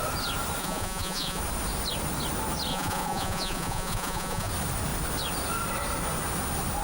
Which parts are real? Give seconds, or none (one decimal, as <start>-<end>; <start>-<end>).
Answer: 0.0-0.6; 1.4-2.7; 4.5-6.8